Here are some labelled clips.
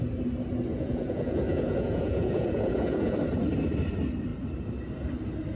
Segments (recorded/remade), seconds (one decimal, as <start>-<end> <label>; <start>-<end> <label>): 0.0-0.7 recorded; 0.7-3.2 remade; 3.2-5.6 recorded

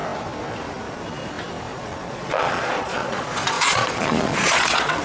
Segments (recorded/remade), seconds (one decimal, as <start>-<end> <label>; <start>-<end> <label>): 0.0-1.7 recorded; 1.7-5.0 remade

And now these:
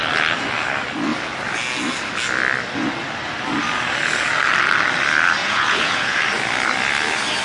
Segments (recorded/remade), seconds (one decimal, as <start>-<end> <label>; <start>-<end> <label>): 0.0-5.4 recorded; 5.4-6.2 remade; 6.2-7.4 recorded